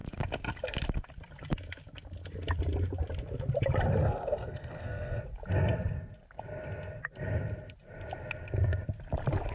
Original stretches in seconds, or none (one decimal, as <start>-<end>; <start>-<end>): 0.0-4.0; 5.2-9.5